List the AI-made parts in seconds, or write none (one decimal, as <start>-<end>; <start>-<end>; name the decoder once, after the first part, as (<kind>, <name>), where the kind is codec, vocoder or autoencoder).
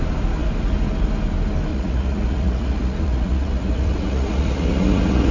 1.7-5.3 (vocoder, Vocos)